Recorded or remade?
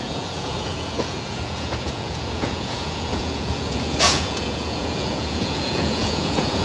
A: remade